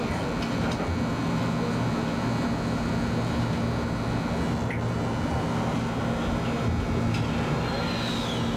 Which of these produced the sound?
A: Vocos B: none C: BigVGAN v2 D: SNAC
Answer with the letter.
B